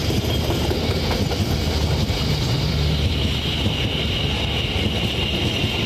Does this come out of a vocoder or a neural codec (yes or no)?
no